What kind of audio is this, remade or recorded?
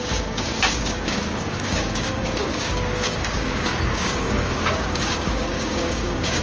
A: remade